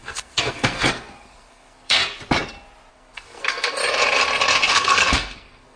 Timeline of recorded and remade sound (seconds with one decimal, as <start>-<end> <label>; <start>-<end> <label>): 0.0-2.0 remade; 2.0-2.9 recorded; 2.9-3.8 remade; 3.8-4.7 recorded; 4.7-5.8 remade